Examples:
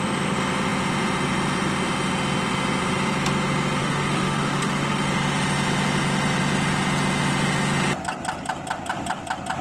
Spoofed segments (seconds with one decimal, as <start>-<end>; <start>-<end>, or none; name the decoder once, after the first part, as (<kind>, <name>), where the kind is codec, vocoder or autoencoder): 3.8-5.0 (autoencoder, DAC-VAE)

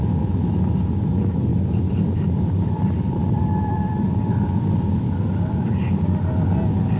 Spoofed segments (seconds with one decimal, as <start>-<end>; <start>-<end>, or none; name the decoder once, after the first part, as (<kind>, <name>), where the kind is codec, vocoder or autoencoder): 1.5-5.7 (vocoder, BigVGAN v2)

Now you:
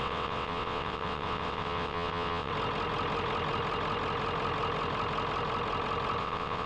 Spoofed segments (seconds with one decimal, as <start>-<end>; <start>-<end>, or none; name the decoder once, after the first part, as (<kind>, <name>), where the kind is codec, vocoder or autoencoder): 0.0-2.5 (vocoder, WaveNeXt); 6.2-6.7

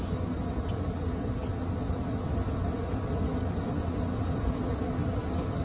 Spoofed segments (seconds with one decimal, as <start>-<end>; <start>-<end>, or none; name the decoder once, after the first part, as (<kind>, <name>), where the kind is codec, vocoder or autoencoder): none